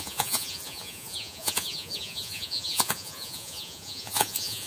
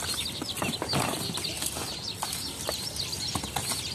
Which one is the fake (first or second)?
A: first